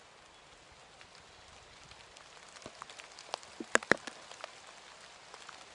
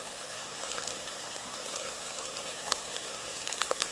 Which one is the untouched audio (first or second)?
first